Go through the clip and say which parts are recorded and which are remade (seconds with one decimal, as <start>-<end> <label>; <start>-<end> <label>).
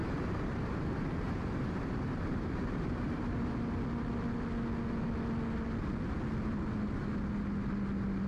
0.0-3.7 remade; 3.7-8.3 recorded